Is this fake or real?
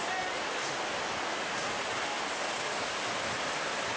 real